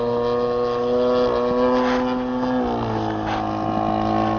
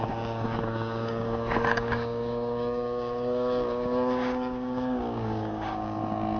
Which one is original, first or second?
first